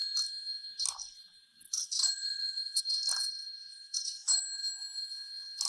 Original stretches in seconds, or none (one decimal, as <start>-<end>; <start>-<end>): 0.0-1.5; 2.8-3.2; 4.4-5.7